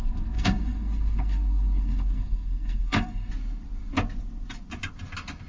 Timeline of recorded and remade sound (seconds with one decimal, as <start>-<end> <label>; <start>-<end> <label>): 0.0-3.3 remade; 3.3-5.5 recorded